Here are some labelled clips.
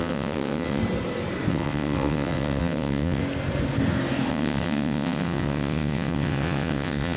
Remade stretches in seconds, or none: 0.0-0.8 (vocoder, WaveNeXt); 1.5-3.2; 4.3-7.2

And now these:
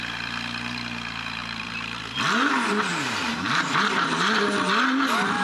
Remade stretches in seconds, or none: 1.4-2.0 (vocoder, BigVGAN v2); 2.9-4.4

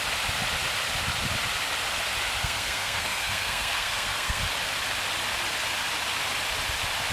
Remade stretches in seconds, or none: 2.4-4.4 (codec, SNAC)

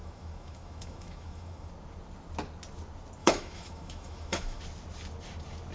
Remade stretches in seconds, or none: 0.0-1.7 (autoencoder, DAC-VAE); 3.2-4.6